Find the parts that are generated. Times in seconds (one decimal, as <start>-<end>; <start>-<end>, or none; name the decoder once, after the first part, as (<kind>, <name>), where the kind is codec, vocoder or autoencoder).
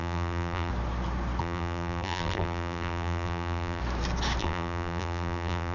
0.0-0.7 (vocoder, BigVGAN v2); 1.4-3.8; 4.4-5.7